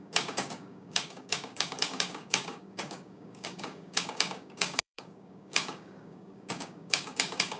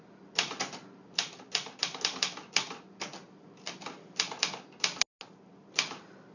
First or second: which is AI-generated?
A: first